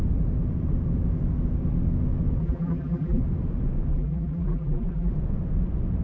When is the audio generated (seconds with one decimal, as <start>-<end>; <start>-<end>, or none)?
2.4-3.2; 3.9-5.1